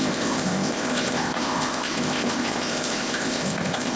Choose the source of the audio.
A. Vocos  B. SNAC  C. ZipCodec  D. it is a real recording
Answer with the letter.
C